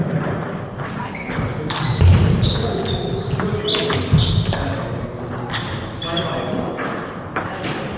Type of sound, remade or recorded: recorded